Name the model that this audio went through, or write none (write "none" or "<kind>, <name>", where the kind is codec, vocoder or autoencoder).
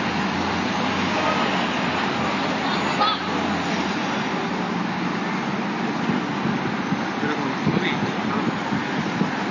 none